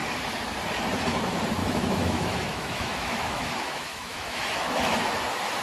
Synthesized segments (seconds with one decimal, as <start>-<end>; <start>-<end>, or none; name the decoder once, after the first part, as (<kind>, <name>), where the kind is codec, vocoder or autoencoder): 1.6-5.0 (autoencoder, DAC-VAE)